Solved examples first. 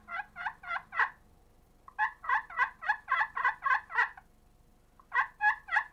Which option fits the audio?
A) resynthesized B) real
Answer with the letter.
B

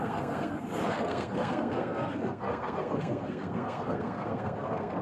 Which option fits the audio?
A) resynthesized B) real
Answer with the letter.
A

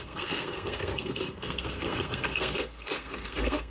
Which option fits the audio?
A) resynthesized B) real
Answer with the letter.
A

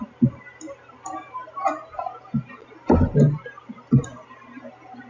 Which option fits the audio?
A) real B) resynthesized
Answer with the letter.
A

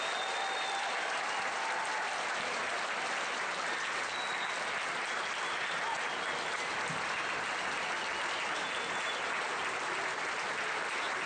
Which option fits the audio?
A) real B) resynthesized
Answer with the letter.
A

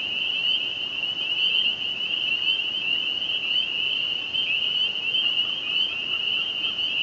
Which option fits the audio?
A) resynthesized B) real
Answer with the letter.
B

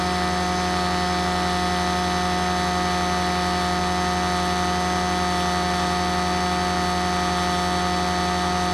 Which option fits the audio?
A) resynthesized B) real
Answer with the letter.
B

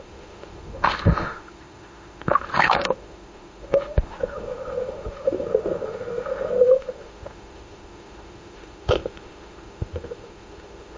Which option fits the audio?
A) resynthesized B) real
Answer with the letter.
A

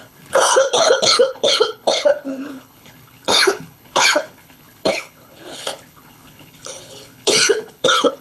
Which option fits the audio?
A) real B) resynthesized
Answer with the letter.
B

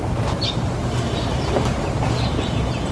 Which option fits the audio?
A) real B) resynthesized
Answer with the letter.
A